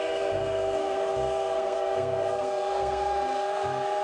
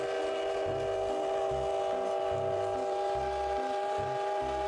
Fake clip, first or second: first